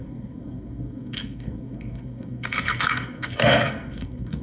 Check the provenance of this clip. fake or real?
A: fake